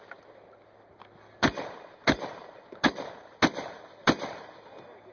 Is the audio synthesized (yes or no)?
no